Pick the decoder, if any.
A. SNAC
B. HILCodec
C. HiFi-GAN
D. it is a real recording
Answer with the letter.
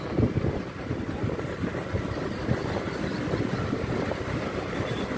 D